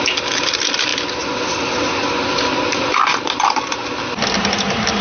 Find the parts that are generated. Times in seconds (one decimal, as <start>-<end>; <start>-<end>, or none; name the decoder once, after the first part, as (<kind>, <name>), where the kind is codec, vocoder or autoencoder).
none